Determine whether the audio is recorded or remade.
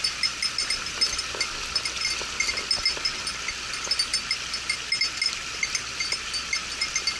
recorded